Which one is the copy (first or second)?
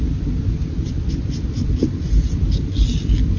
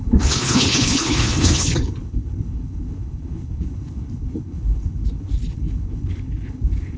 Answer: second